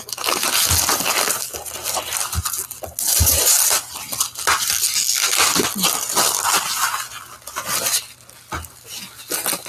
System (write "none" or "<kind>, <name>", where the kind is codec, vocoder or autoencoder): none